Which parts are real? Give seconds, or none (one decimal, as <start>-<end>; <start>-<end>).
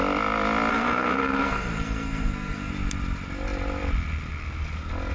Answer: 0.0-0.7; 2.7-5.1